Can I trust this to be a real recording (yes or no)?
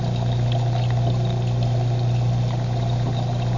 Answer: yes